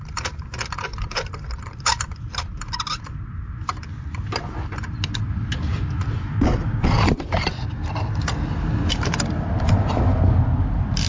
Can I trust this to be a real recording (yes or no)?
yes